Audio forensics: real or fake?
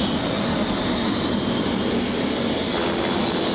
real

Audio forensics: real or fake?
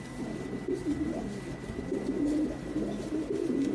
real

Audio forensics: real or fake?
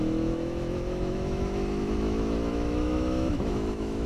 fake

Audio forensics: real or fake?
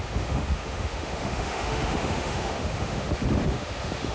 fake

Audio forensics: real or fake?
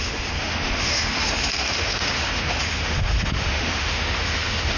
fake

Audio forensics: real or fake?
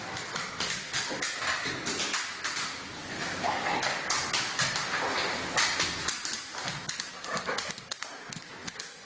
real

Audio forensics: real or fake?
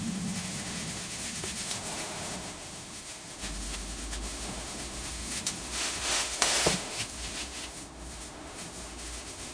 fake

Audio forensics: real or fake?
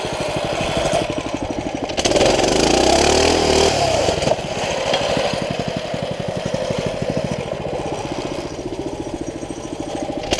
real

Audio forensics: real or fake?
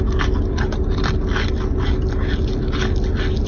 real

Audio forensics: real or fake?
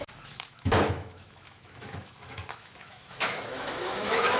fake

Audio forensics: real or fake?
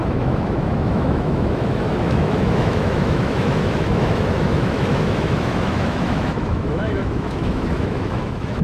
fake